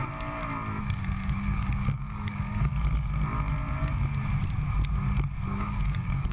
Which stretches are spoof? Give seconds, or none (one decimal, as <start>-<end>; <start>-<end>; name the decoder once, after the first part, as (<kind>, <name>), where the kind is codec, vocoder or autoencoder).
0.8-2.7 (codec, DAC); 5.5-6.3